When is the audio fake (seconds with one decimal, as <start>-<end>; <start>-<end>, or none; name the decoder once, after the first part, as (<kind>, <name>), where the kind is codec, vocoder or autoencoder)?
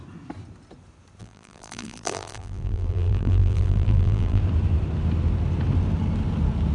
1.2-4.4 (vocoder, BigVGAN v2)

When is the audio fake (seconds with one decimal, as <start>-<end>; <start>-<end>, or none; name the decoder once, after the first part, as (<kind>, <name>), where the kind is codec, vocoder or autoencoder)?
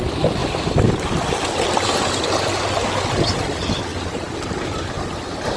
0.4-0.9 (vocoder, BigVGAN v2)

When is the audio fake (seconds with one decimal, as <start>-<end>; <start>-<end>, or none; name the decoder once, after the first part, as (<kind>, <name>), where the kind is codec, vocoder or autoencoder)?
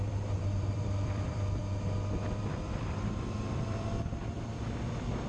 0.0-1.6 (vocoder, BigVGAN v2); 2.4-5.3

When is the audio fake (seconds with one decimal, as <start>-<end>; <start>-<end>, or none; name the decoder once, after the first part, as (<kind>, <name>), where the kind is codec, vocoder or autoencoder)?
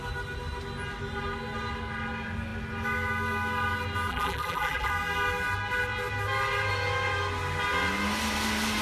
4.1-4.9 (vocoder, BigVGAN v2)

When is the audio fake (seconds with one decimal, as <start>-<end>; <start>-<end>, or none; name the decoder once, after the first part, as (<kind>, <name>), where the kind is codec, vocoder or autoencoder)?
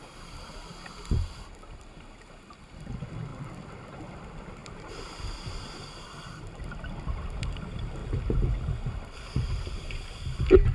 0.0-0.7 (vocoder, BigVGAN v2); 1.8-3.3; 4.0-10.7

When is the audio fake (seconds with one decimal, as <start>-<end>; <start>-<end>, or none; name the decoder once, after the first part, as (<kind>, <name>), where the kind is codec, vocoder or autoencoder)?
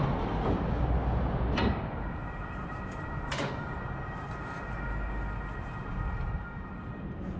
2.2-2.9 (vocoder, BigVGAN v2)